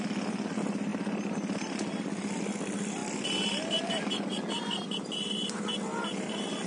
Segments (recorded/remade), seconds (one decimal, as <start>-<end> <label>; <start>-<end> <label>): 0.0-6.7 recorded